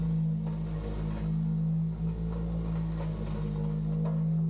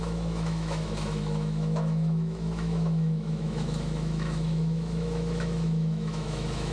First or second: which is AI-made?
second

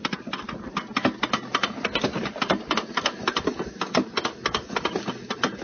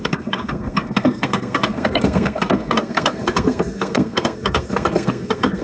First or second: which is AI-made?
second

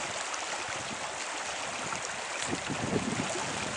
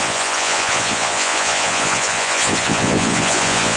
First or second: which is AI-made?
second